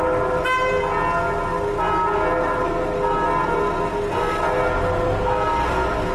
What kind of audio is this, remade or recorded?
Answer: recorded